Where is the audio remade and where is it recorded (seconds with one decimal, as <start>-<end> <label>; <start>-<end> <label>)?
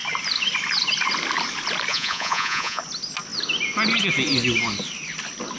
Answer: 0.0-1.9 recorded; 1.9-2.8 remade; 2.8-5.6 recorded